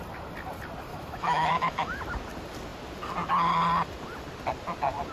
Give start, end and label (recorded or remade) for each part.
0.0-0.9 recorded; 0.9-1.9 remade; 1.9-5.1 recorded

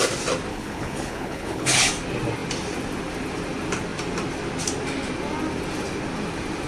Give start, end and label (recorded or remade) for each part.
0.0-0.5 recorded; 0.5-1.9 remade; 1.9-6.7 recorded

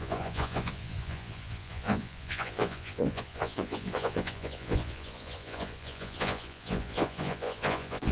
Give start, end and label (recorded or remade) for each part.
0.0-8.1 remade

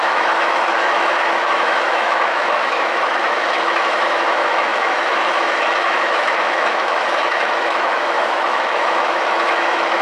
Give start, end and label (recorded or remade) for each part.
0.0-10.0 remade

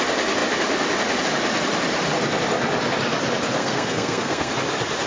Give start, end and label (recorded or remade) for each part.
0.0-3.6 recorded; 3.6-4.5 remade; 4.5-5.1 recorded

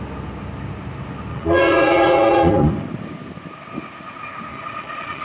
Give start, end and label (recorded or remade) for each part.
0.0-1.3 recorded; 1.3-2.7 remade; 2.7-4.5 recorded; 4.5-5.2 remade

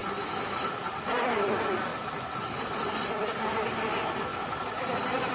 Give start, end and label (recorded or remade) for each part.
0.0-5.3 recorded

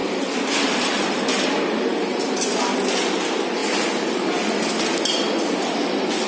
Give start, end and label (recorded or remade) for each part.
0.0-1.3 remade; 1.3-3.6 recorded; 3.6-4.7 remade; 4.7-6.3 recorded